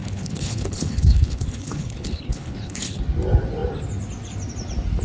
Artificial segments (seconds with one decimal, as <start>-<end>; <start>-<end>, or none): 0.0-3.0